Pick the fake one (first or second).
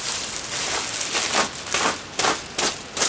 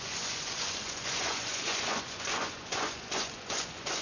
second